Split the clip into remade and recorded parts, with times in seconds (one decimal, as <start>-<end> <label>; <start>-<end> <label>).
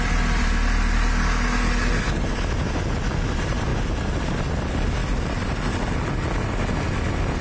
0.0-7.4 recorded